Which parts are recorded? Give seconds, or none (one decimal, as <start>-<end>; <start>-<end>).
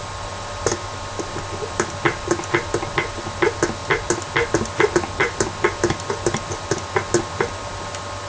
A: 0.0-8.3